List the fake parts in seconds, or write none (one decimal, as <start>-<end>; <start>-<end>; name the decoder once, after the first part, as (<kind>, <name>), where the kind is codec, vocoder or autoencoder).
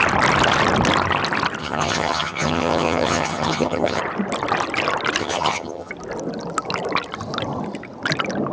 1.6-4.0 (vocoder, HiFi-GAN); 5.2-5.9